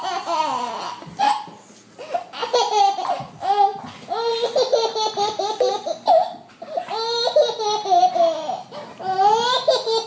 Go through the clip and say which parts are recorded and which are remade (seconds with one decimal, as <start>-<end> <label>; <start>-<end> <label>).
0.0-10.1 recorded